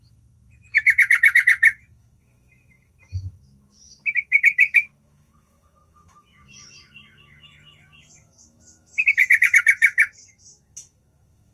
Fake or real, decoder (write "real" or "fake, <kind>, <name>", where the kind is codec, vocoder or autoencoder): fake, autoencoder, DAC-VAE